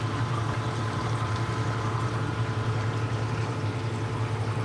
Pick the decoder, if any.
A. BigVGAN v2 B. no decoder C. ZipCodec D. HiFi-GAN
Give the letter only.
A